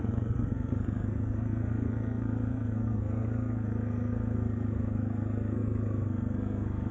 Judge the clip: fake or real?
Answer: fake